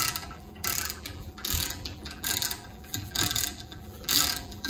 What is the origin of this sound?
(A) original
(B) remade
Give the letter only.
B